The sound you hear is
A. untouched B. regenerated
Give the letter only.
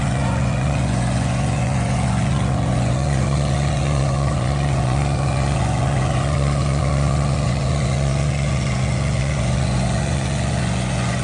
B